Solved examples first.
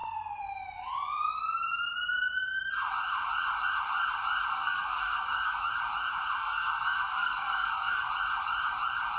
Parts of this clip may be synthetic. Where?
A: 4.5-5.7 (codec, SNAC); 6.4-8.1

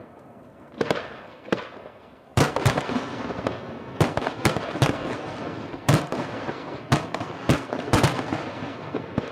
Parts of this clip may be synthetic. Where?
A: 0.0-9.3 (codec, SNAC)